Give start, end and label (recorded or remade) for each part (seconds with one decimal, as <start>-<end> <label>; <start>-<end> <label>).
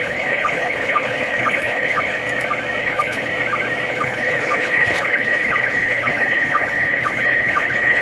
0.0-2.2 remade; 2.2-2.8 recorded; 2.8-3.3 remade; 3.3-3.9 recorded; 3.9-8.0 remade